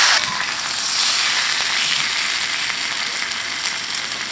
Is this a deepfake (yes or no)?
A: no